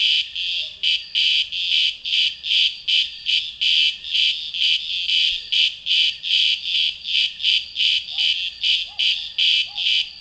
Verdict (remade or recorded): recorded